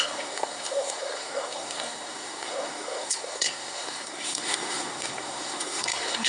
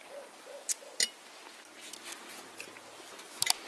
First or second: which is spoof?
first